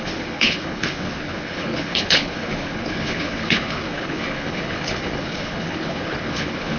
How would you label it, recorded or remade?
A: remade